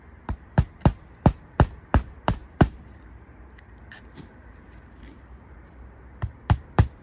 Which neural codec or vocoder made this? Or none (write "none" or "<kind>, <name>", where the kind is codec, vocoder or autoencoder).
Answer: vocoder, BigVGAN v2